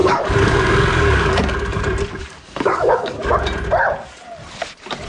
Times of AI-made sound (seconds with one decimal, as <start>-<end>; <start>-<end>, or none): 0.0-1.8; 2.2-3.2